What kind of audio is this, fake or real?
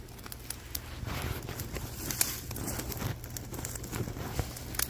real